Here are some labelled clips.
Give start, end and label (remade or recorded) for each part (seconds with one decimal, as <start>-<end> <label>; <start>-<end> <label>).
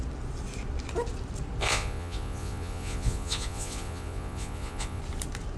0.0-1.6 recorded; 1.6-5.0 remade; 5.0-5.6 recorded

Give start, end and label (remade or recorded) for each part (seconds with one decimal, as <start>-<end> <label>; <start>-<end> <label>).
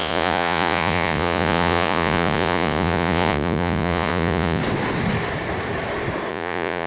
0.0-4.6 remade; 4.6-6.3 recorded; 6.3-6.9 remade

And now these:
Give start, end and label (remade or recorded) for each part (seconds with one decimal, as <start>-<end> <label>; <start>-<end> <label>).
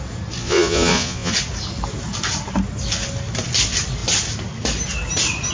0.0-0.4 recorded; 0.4-1.3 remade; 1.3-5.5 recorded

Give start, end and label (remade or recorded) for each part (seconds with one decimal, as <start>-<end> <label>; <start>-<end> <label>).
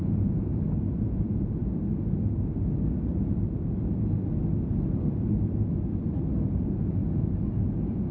0.0-0.5 remade; 0.5-1.0 recorded; 1.0-1.6 remade; 1.6-6.5 recorded; 6.5-7.0 remade; 7.0-7.5 recorded; 7.5-8.1 remade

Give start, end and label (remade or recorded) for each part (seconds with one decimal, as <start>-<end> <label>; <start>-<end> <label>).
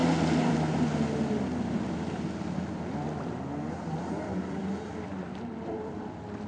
0.0-6.5 recorded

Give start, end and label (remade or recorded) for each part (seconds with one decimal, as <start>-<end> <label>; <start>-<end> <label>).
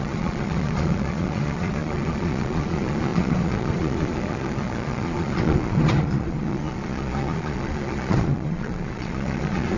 0.0-9.8 remade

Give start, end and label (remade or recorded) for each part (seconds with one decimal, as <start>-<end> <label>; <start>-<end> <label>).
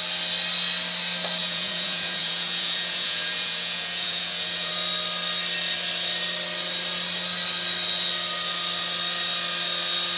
0.0-1.4 recorded; 1.4-4.7 remade; 4.7-10.2 recorded